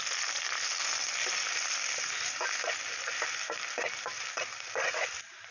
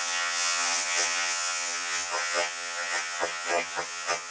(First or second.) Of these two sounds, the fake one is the second